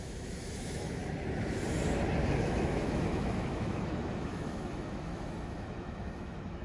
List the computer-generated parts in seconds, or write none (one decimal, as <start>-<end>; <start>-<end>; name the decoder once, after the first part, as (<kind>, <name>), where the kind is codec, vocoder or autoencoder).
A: 0.0-1.0 (autoencoder, DAC-VAE); 2.4-6.6